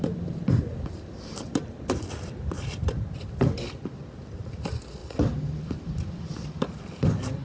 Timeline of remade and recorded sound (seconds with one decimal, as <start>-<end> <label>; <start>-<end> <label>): 0.0-0.7 remade; 0.7-2.2 recorded; 2.2-5.0 remade; 5.0-6.1 recorded; 6.1-7.4 remade